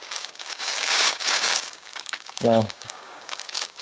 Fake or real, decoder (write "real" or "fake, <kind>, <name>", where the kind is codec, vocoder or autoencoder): fake, codec, DAC